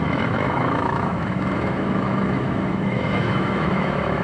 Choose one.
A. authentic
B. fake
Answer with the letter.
B